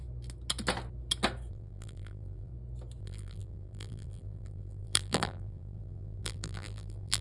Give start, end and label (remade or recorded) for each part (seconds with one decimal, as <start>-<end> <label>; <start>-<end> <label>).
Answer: 0.0-1.5 recorded; 1.5-2.5 remade; 2.5-3.0 recorded; 3.0-7.2 remade